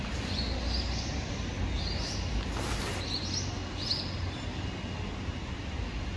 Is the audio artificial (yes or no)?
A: no